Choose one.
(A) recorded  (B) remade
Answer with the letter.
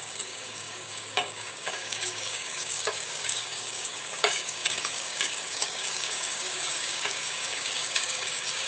B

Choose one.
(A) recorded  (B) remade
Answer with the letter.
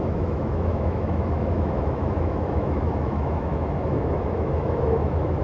B